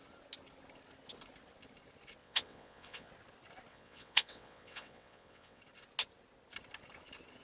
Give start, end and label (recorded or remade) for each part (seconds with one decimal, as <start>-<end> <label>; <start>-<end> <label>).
0.0-2.2 recorded; 2.2-3.1 remade; 3.1-3.7 recorded; 3.7-5.6 remade; 5.6-7.4 recorded